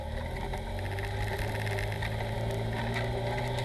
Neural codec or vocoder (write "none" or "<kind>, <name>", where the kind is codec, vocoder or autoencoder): none